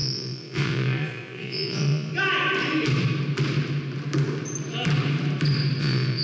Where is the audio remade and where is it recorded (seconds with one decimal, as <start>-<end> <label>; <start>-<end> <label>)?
0.0-2.1 remade; 2.1-5.8 recorded; 5.8-6.2 remade